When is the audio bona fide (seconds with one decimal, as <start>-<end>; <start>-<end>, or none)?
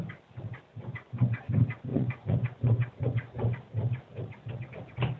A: 0.0-0.7; 1.4-1.9; 3.5-5.2